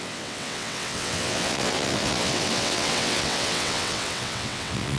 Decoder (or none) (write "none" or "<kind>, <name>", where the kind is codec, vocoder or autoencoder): vocoder, WaveNeXt